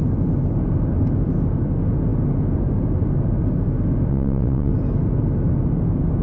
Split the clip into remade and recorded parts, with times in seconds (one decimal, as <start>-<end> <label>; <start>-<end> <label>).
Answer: 0.0-4.1 recorded; 4.1-4.7 remade; 4.7-6.2 recorded